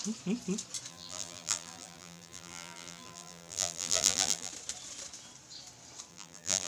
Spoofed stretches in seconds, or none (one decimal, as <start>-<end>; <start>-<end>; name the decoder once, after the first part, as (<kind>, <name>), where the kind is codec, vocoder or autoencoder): 0.9-4.5 (vocoder, BigVGAN v2); 6.1-6.7

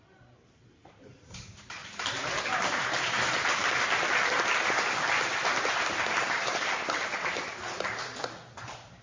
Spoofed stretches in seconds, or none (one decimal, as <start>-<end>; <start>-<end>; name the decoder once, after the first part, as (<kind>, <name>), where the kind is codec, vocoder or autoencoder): 0.0-1.8 (vocoder, BigVGAN v2); 2.4-3.6; 8.6-9.0

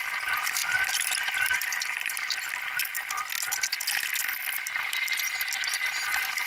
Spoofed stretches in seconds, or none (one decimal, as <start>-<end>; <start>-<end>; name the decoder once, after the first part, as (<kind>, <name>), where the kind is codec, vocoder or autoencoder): 0.6-2.5 (vocoder, BigVGAN v2); 4.4-4.9

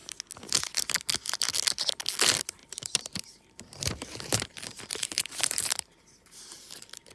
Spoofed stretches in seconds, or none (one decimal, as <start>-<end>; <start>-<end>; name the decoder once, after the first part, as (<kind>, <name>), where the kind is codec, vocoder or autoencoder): 2.6-7.1 (vocoder, BigVGAN v2)

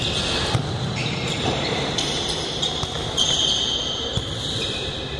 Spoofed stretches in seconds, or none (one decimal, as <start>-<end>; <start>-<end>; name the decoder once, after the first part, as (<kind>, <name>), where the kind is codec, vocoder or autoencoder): 1.0-4.1 (vocoder, BigVGAN v2)

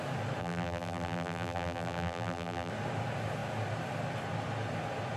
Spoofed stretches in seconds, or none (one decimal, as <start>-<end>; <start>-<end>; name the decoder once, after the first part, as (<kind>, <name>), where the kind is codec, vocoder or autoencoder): 0.4-2.7 (vocoder, BigVGAN v2)

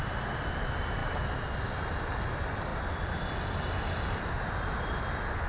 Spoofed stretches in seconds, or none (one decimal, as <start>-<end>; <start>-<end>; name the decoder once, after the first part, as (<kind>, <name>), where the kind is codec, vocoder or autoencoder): 2.7-3.2 (vocoder, BigVGAN v2)